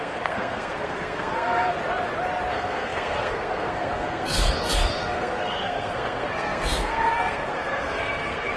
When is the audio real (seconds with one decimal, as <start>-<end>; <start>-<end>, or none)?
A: 1.8-2.5

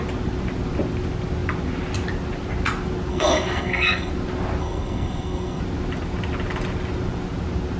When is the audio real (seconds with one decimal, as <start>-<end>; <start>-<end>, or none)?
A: 0.0-3.1; 4.1-4.6; 5.6-7.8

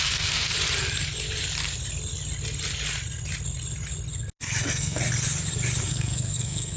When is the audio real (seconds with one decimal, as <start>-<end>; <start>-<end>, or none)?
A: 0.5-4.6; 5.0-5.8

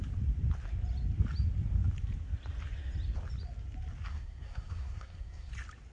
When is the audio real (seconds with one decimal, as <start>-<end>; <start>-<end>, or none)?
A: 0.0-4.1; 5.5-5.9

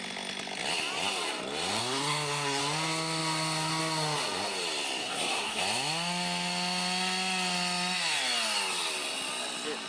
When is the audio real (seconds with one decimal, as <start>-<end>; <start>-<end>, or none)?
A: 0.0-1.8; 2.6-5.0; 5.6-9.9

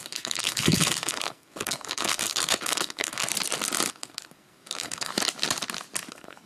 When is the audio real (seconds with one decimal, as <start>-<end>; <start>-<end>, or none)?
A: 3.3-3.9; 5.1-6.1

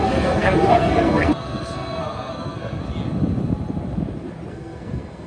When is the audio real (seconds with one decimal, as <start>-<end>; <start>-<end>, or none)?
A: 2.8-4.5